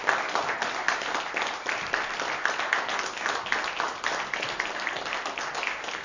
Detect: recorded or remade recorded